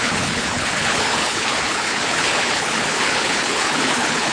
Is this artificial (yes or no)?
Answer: yes